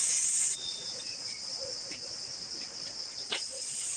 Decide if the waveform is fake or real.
fake